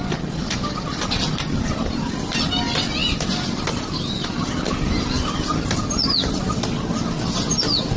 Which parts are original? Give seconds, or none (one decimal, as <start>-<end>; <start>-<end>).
0.0-8.0